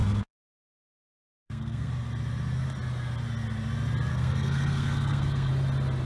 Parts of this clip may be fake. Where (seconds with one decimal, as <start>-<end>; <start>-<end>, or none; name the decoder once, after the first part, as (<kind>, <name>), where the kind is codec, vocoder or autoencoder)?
0.0-1.9 (codec, SNAC); 4.1-5.5